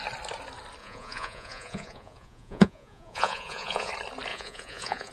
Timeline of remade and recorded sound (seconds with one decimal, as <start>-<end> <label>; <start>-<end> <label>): 0.0-0.8 recorded; 0.8-3.9 remade; 3.9-4.3 recorded; 4.3-5.1 remade